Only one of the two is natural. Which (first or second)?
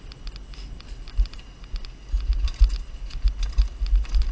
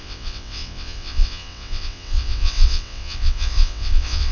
first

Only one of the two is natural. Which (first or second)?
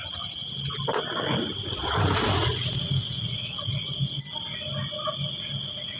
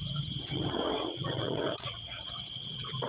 first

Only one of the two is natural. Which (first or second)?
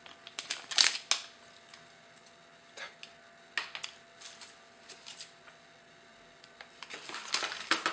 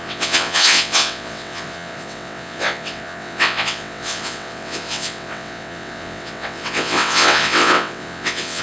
first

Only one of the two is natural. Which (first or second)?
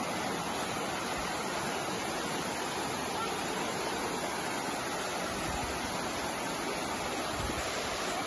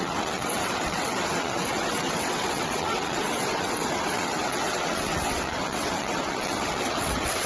first